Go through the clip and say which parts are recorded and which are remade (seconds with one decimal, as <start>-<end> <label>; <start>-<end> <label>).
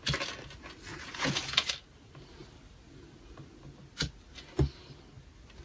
0.0-0.9 recorded; 0.9-1.7 remade; 1.7-5.6 recorded